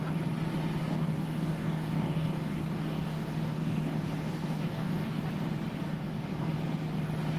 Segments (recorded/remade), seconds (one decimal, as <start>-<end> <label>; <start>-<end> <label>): 0.0-0.8 recorded; 0.8-5.2 remade; 5.2-5.9 recorded; 5.9-6.5 remade; 6.5-7.4 recorded